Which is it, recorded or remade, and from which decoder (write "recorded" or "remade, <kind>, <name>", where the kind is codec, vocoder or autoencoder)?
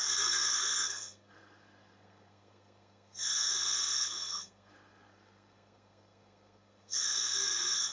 remade, codec, SNAC